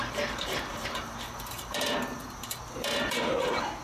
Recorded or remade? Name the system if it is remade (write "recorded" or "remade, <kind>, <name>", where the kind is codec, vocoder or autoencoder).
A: remade, vocoder, BigVGAN v2